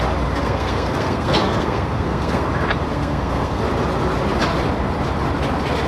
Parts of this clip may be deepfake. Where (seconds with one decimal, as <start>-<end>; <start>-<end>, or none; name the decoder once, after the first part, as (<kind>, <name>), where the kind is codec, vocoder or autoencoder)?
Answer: 0.4-2.5 (codec, SNAC); 2.9-3.6